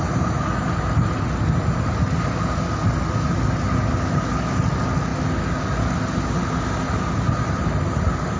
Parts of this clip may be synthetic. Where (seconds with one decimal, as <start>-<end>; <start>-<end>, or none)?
none